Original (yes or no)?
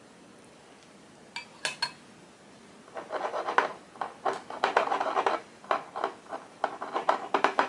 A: yes